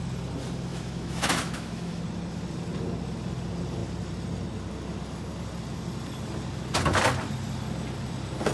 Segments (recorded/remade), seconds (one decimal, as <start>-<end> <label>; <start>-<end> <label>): 0.0-0.7 recorded; 0.7-2.0 remade; 2.0-8.5 recorded